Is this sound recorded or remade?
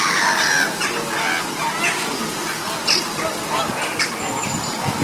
recorded